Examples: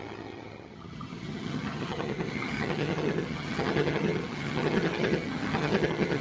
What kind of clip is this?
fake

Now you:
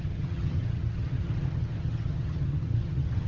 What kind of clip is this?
fake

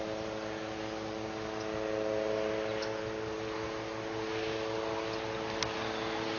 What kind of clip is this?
real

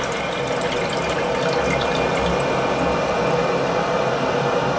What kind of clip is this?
real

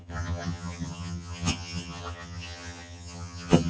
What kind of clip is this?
fake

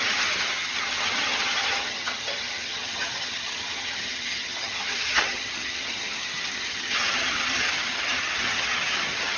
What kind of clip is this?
fake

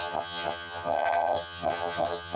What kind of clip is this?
fake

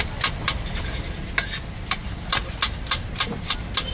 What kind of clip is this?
real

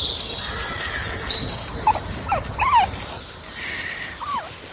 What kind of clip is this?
real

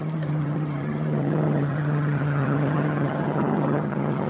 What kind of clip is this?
fake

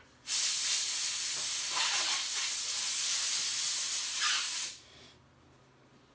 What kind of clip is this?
real